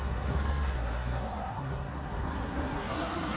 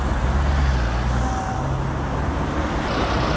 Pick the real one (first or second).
second